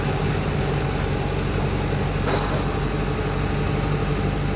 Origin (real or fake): real